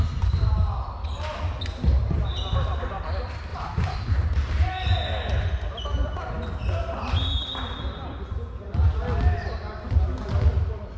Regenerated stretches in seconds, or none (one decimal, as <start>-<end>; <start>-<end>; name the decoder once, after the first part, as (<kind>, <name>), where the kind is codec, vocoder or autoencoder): 3.5-4.5 (vocoder, BigVGAN v2)